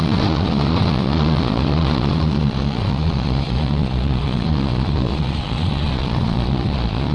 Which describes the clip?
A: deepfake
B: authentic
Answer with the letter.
A